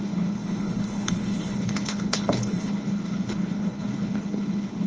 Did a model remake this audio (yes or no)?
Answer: yes